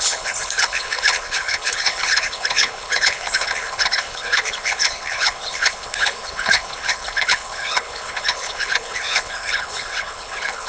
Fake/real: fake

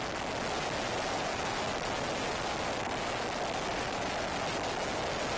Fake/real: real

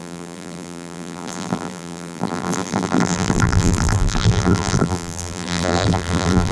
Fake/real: fake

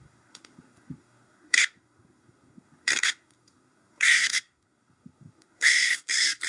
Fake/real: fake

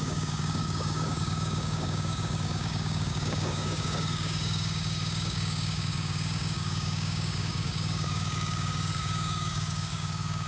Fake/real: fake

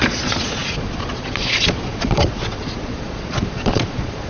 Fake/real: fake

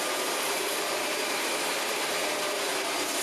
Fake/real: fake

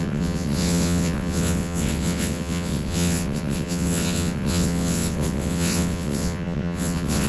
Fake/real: fake